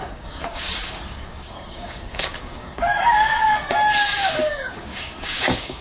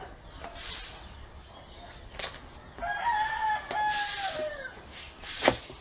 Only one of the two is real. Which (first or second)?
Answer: second